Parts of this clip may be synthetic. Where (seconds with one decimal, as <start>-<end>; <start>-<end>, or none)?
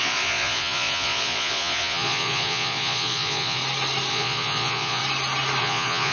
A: 0.0-3.6; 4.1-5.0; 5.6-6.1